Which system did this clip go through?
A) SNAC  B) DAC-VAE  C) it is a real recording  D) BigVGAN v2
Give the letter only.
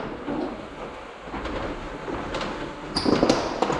C